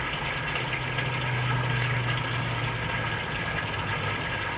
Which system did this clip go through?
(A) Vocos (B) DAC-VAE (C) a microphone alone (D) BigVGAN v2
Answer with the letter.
C